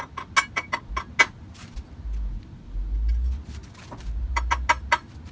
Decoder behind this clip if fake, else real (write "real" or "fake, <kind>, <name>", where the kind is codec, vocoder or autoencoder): real